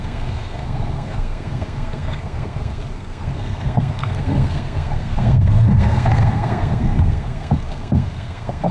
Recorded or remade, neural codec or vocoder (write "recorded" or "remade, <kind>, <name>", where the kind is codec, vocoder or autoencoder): remade, codec, SNAC